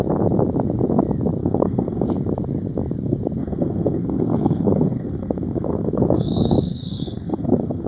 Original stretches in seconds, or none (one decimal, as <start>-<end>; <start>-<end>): 0.0-1.4; 2.1-3.4